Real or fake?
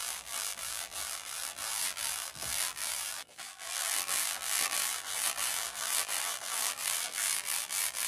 fake